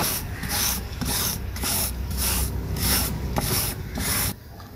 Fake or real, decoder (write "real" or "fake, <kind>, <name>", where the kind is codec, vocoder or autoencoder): fake, codec, DAC